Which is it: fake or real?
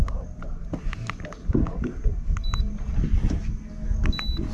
real